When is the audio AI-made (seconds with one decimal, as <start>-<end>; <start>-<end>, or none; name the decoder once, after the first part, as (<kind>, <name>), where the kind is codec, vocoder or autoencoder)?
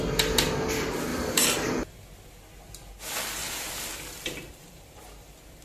1.1-1.8 (vocoder, BigVGAN v2); 3.4-5.6